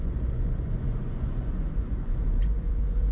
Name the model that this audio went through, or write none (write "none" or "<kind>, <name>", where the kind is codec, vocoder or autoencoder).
vocoder, Vocos